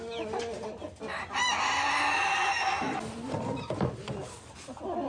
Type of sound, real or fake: real